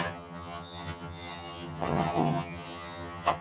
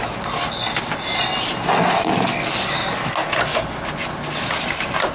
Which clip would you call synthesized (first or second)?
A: first